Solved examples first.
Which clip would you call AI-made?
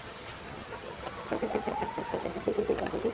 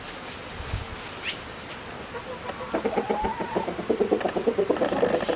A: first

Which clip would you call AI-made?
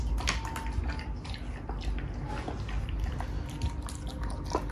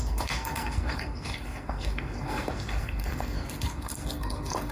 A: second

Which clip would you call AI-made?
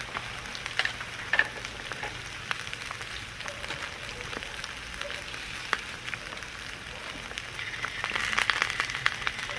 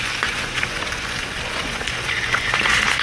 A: second